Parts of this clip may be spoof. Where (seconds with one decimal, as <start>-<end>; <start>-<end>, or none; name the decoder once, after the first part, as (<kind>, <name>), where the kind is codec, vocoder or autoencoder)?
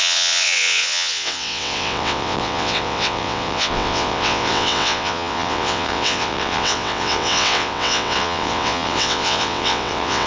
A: 0.0-10.3 (vocoder, WaveNeXt)